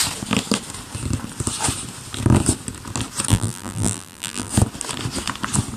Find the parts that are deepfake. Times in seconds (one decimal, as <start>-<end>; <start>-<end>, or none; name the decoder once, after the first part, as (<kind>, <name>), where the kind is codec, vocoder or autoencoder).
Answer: 3.3-4.5 (vocoder, BigVGAN v2)